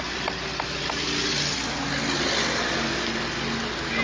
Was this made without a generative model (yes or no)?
yes